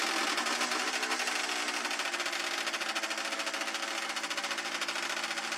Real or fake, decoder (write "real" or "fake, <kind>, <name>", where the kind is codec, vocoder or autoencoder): real